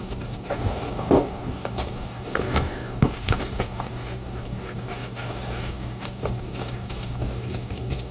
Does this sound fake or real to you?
fake